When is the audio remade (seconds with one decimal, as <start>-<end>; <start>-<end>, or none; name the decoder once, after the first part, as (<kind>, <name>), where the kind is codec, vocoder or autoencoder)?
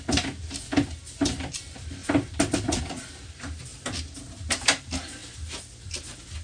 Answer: none